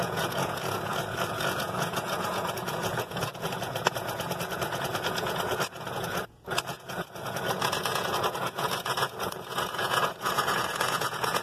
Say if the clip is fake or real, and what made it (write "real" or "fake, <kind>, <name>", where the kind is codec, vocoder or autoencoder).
fake, vocoder, Vocos